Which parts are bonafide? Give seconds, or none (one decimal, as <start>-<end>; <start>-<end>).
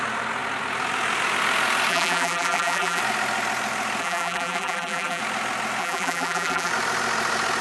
0.0-1.9; 3.0-4.0; 5.2-5.8; 6.7-7.6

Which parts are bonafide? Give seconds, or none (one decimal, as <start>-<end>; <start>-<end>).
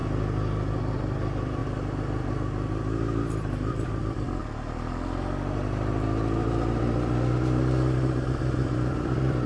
0.0-0.8; 1.6-4.0; 4.4-8.4